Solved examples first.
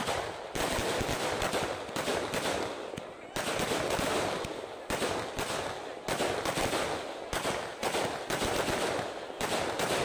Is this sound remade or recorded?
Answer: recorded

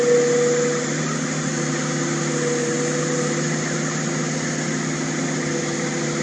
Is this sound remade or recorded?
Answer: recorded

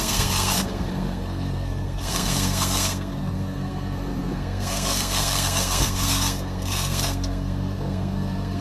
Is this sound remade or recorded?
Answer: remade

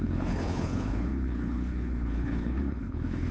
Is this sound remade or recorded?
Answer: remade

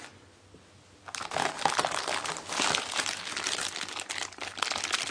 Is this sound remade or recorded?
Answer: recorded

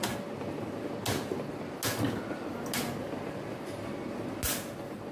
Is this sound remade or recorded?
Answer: recorded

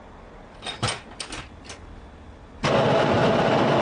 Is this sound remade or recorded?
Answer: recorded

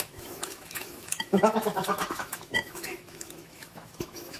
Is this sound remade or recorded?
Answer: remade